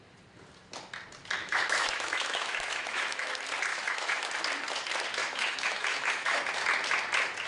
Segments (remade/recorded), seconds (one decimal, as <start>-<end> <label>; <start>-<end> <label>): 0.0-1.4 recorded; 1.4-3.3 remade; 3.3-3.7 recorded; 3.7-4.3 remade; 4.3-5.2 recorded; 5.2-6.4 remade; 6.4-7.5 recorded